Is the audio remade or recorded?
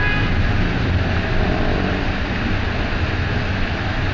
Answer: recorded